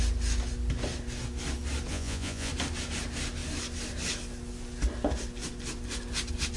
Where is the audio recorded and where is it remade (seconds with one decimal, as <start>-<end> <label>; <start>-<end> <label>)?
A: 0.0-1.9 recorded; 1.9-2.5 remade; 2.5-6.6 recorded